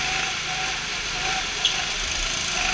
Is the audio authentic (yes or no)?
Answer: yes